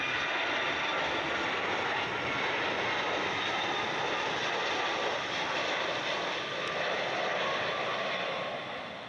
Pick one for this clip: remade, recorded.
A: recorded